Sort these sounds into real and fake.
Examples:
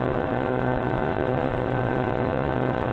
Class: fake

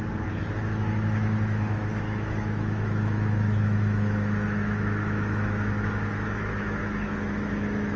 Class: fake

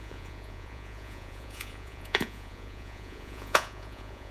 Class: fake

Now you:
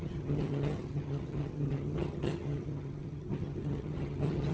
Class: fake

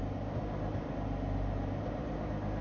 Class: real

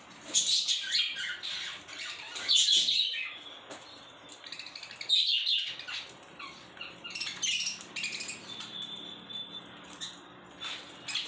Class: real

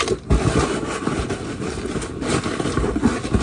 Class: real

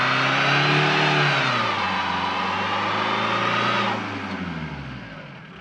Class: real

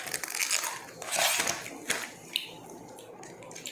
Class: real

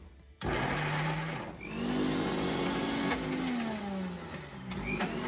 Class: real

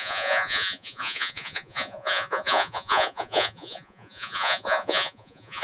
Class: fake